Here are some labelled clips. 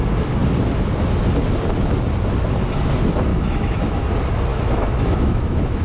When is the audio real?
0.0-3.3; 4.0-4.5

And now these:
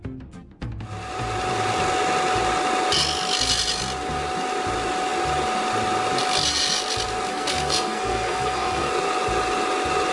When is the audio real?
0.0-7.3; 8.9-10.1

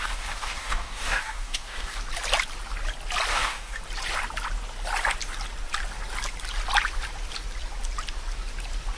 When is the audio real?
2.0-3.3; 3.8-9.0

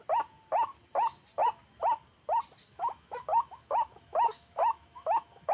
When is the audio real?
0.0-2.7